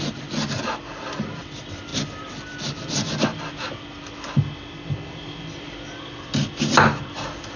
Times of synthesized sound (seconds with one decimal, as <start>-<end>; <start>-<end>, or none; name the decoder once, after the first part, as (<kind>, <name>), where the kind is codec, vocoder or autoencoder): none